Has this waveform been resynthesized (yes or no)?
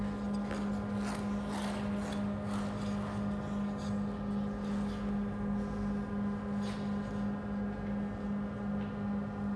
no